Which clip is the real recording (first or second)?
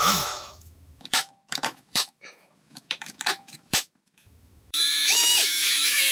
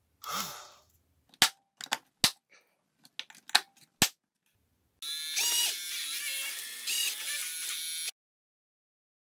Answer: second